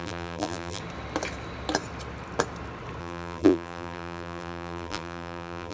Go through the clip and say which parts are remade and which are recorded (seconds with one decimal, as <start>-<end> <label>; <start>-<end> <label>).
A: 0.0-0.8 remade; 0.8-3.0 recorded; 3.0-5.7 remade